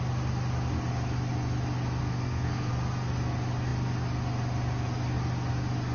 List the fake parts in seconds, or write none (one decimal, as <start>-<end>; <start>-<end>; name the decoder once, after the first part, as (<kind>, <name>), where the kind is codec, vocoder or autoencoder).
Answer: 2.0-2.7 (codec, SNAC)